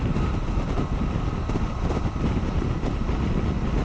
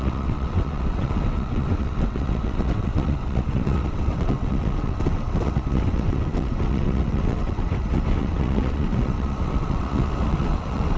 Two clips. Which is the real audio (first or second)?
first